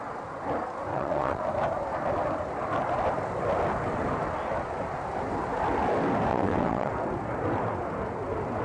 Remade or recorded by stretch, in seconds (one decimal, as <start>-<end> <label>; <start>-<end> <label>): 0.0-0.9 recorded; 0.9-1.4 remade; 1.4-6.3 recorded; 6.3-6.9 remade; 6.9-8.6 recorded